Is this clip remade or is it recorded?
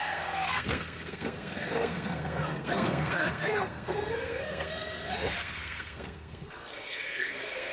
remade